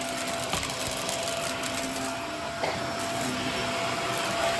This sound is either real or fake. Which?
real